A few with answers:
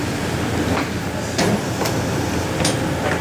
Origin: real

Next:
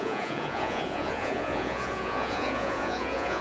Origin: fake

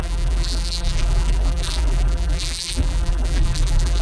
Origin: fake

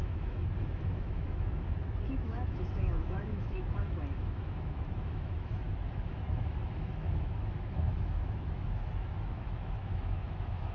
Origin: fake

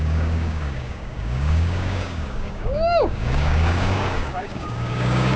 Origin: fake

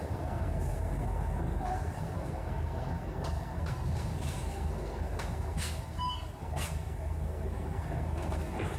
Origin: fake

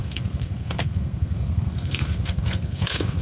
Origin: fake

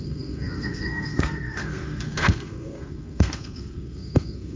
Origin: fake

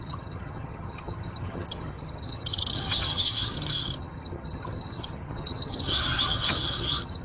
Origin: fake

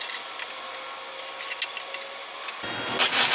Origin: real